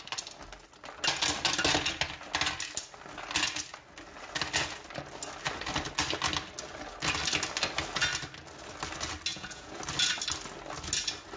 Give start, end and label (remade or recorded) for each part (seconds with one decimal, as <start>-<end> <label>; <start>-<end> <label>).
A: 0.0-9.3 recorded; 9.3-9.8 remade; 9.8-11.4 recorded